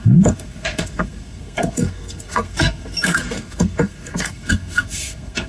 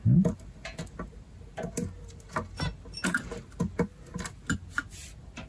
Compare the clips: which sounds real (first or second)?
second